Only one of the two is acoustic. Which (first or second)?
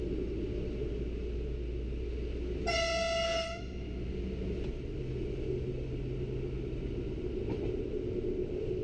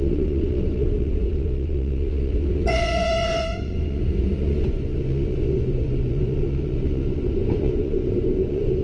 first